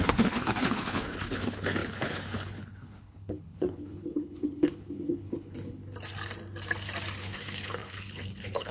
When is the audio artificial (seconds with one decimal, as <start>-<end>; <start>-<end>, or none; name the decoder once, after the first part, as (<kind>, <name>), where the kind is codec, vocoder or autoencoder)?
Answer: 0.0-5.8 (codec, HILCodec); 7.2-8.7